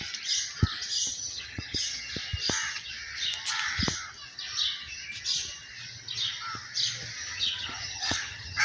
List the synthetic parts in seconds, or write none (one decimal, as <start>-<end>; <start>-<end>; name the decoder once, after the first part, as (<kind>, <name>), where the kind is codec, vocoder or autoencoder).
1.1-2.1 (vocoder, HiFi-GAN); 7.2-8.6